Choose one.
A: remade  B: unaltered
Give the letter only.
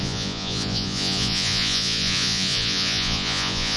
A